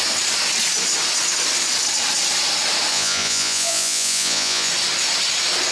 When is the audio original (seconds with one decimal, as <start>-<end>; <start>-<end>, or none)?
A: 0.0-2.9; 4.7-5.7